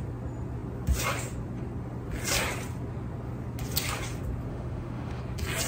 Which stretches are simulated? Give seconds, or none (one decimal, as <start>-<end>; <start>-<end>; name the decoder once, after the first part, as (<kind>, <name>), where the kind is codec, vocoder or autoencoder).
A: 4.5-5.2 (autoencoder, DAC-VAE)